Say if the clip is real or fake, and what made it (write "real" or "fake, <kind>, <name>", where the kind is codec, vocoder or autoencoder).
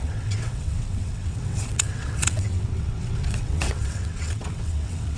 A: fake, vocoder, WaveNeXt